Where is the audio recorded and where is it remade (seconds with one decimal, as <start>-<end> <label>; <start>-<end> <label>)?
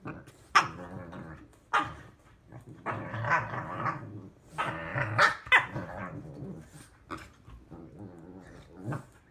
0.0-9.3 recorded